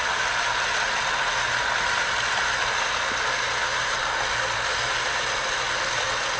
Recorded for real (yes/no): yes